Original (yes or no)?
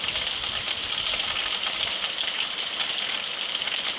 yes